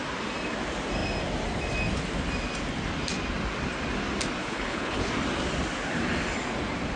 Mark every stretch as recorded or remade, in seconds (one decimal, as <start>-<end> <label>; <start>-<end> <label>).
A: 0.0-4.4 recorded; 4.4-5.1 remade; 5.1-7.0 recorded